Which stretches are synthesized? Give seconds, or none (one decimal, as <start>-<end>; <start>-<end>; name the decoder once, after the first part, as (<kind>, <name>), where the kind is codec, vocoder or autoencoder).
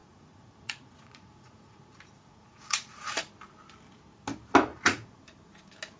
0.0-3.3 (vocoder, Vocos); 4.7-5.2